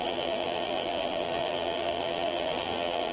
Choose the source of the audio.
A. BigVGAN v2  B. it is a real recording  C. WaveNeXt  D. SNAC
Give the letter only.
A